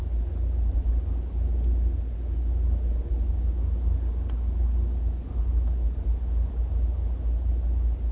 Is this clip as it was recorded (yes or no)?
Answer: yes